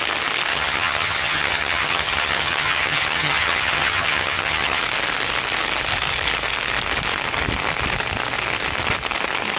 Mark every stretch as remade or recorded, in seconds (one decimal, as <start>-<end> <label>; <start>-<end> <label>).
0.0-0.5 recorded; 0.5-4.8 remade; 4.8-9.6 recorded